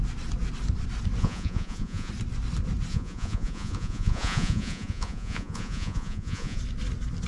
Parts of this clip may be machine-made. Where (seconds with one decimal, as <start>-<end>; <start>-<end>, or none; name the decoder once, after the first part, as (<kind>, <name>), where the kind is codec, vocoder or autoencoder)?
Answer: 1.2-2.1 (vocoder, Vocos); 2.9-6.6